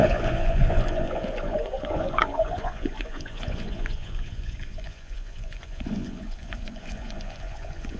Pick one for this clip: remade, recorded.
remade